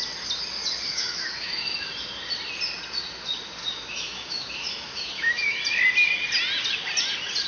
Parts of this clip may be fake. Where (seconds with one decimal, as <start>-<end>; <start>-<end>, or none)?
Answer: 0.9-1.9; 3.6-5.6